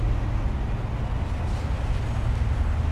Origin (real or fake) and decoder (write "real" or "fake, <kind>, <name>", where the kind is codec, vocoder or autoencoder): real